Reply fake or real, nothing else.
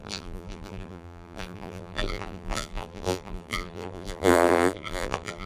fake